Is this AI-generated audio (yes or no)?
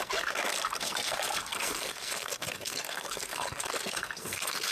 yes